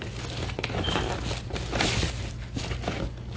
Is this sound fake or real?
real